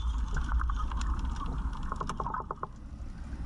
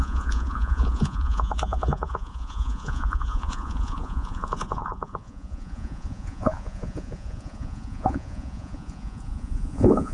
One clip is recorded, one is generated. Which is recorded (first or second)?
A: first